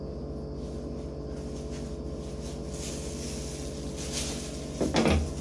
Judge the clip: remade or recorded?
recorded